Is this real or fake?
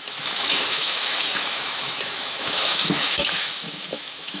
fake